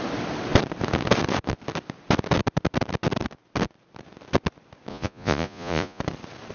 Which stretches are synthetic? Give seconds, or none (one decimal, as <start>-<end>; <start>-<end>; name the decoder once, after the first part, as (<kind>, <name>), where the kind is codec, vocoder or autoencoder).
4.9-6.0 (vocoder, Vocos)